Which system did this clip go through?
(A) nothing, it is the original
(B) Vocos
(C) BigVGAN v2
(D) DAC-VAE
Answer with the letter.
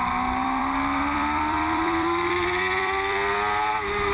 C